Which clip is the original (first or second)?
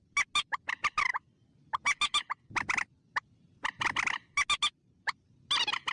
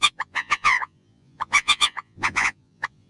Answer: first